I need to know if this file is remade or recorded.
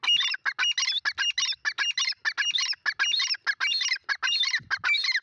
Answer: recorded